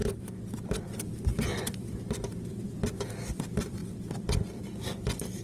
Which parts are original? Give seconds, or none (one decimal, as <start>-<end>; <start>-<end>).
0.0-0.9